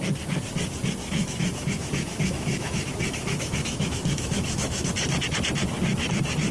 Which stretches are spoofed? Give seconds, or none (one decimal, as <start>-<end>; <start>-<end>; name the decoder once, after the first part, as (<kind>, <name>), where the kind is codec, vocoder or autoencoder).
1.0-4.9 (autoencoder, DAC-VAE)